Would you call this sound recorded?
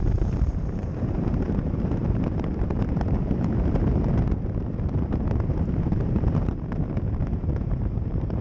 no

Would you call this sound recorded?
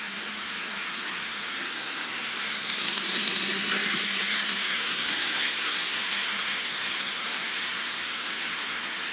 no